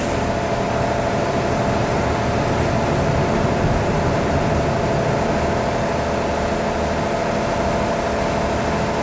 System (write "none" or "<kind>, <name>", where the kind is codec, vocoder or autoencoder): none